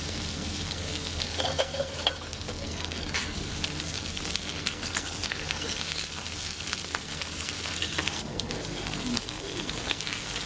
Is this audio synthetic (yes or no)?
yes